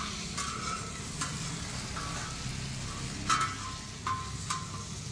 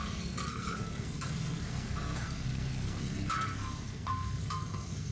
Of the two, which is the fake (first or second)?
second